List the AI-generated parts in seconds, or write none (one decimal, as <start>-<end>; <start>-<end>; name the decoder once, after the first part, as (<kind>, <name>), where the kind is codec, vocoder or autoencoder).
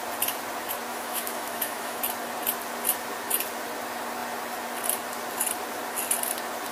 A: 0.9-2.0 (autoencoder, DAC-VAE)